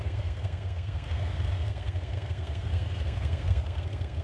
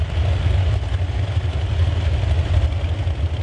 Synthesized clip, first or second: first